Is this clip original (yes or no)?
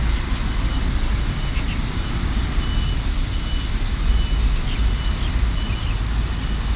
yes